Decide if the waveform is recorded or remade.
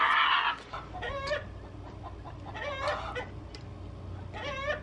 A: recorded